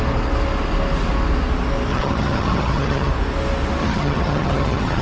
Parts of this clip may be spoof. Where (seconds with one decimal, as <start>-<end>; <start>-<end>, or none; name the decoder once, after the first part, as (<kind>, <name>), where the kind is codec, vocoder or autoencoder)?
1.9-3.1 (vocoder, HiFi-GAN); 3.8-5.0